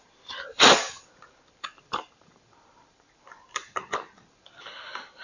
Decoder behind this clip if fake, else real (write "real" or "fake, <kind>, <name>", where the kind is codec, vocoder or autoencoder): fake, vocoder, BigVGAN v2